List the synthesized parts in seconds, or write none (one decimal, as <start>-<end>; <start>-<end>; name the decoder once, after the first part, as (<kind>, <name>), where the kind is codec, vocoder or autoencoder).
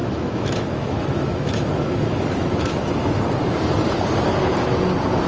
0.0-3.2 (autoencoder, DAC-VAE)